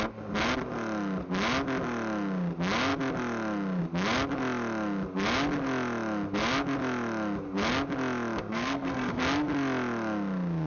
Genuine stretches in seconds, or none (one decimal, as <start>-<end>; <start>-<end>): 0.0-8.4; 9.2-10.7